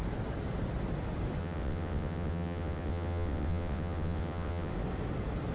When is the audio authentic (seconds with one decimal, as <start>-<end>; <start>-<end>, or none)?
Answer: 0.0-1.4; 4.7-5.5